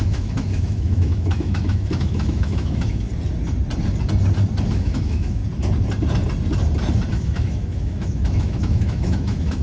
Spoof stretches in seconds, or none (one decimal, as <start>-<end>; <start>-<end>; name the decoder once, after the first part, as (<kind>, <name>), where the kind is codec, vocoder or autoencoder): 0.0-3.1 (autoencoder, DAC-VAE); 4.7-5.4; 7.1-9.6